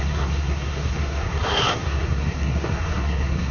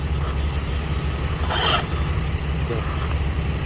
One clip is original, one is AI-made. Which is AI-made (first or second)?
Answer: first